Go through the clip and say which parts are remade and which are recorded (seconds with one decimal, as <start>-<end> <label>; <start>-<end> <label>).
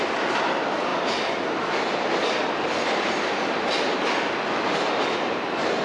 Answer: 0.0-5.8 recorded